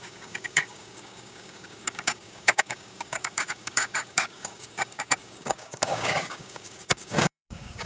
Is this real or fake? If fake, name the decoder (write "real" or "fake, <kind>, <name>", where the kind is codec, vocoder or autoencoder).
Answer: fake, codec, DAC